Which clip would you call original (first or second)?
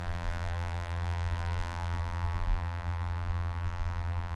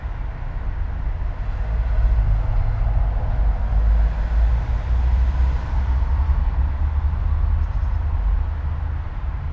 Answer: second